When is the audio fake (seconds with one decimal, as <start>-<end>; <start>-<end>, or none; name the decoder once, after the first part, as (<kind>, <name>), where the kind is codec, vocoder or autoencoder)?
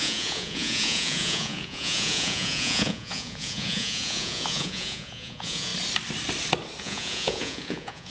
0.0-5.7 (vocoder, Vocos); 6.8-8.1